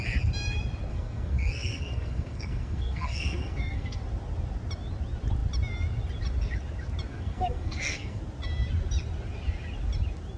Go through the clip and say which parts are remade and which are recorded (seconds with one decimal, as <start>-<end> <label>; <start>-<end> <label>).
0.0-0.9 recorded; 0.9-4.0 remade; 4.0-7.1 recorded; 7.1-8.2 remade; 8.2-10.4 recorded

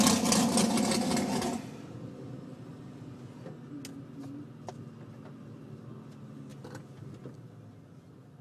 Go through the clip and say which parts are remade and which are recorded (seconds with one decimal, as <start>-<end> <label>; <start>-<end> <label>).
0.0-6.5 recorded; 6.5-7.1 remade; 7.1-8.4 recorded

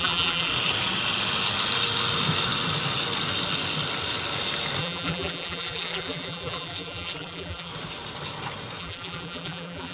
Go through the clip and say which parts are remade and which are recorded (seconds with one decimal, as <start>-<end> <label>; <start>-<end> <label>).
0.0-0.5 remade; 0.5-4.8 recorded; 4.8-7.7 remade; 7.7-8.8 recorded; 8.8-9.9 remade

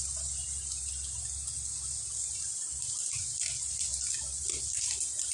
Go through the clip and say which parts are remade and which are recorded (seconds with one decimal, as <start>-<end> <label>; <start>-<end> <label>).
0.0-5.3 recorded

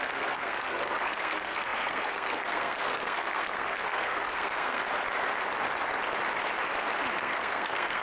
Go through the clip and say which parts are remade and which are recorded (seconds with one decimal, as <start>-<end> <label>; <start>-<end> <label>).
0.0-4.8 remade; 4.8-7.2 recorded; 7.2-8.0 remade